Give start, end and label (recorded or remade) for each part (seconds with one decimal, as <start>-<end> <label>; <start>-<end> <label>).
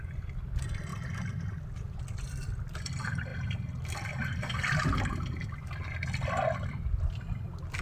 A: 0.0-7.8 recorded